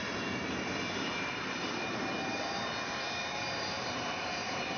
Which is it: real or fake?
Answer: fake